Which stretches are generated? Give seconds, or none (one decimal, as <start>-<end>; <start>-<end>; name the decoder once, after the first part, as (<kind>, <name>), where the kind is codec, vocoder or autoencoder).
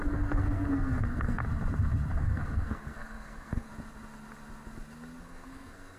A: 0.0-1.4 (codec, SNAC); 2.1-3.7; 5.2-6.0